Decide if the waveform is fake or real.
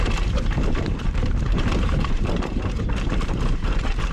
fake